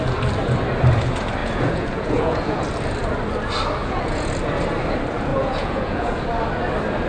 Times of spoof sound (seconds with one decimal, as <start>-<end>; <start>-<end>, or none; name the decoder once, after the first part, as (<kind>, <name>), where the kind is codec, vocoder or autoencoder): 1.4-2.6 (vocoder, Vocos); 3.8-4.3; 5.3-6.2